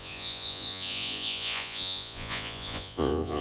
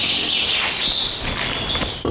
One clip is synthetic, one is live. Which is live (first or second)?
second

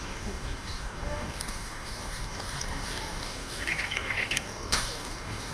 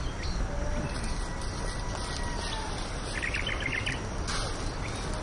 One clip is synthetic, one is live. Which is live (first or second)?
second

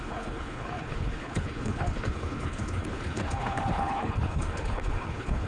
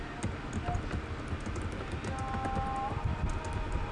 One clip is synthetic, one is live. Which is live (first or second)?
second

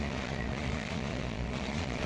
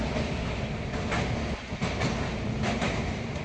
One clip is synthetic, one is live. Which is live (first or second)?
second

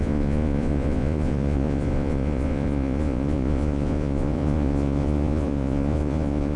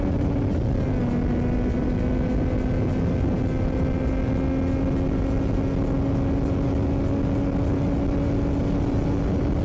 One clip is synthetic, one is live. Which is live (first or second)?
second